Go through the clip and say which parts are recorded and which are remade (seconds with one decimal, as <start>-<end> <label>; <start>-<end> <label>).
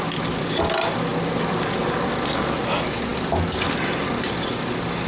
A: 0.0-5.1 recorded